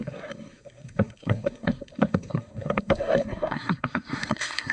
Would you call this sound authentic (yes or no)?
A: no